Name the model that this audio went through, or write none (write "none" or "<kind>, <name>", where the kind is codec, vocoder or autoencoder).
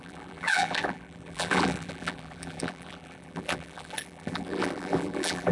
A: vocoder, BigVGAN v2